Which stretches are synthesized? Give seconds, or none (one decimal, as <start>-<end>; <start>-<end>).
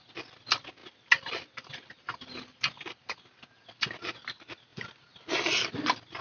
none